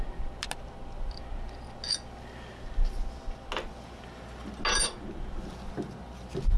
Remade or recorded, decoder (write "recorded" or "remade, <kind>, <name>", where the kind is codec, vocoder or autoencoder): recorded